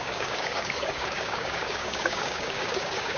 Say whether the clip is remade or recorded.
remade